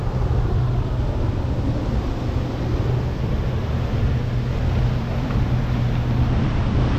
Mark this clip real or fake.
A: real